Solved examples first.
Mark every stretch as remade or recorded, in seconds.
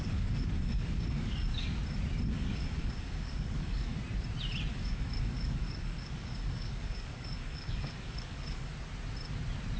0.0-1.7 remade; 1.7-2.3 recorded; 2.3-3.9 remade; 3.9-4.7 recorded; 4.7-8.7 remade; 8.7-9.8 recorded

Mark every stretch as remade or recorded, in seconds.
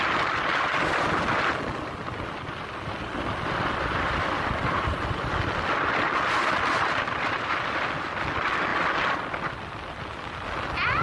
0.0-11.0 recorded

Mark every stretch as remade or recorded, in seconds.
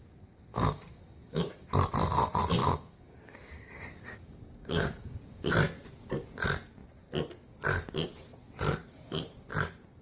0.0-0.5 recorded; 0.5-1.5 remade; 1.5-2.6 recorded; 2.6-5.5 remade; 5.5-10.0 recorded